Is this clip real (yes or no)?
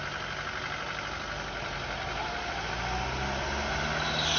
yes